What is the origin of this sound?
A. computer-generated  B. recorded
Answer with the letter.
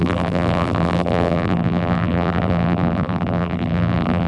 A